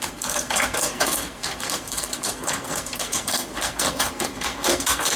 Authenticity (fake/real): fake